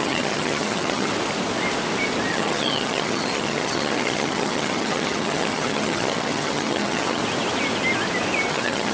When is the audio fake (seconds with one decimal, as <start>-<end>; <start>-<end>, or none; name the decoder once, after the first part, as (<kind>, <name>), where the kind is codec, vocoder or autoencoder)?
0.0-1.1 (vocoder, HiFi-GAN); 2.3-7.2; 8.5-8.9